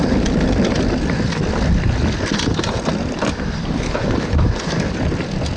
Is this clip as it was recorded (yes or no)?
no